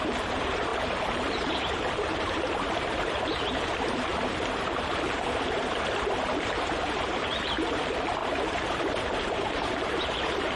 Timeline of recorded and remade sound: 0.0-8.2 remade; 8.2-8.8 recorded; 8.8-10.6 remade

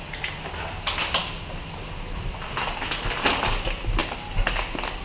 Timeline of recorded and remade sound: 0.0-5.0 recorded

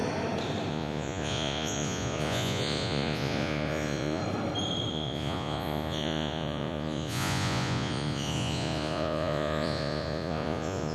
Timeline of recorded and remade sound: 0.0-0.7 recorded; 0.7-4.2 remade; 4.2-4.9 recorded; 4.9-10.9 remade

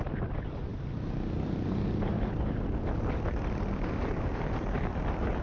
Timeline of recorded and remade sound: 0.0-5.4 recorded

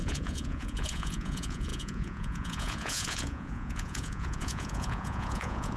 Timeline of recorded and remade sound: 0.0-5.8 remade

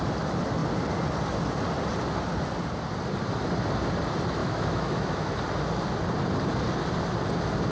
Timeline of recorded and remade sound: 0.0-4.4 recorded; 4.4-5.4 remade; 5.4-7.7 recorded